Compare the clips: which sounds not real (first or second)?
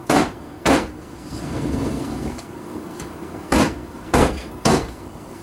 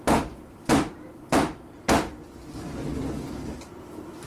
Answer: first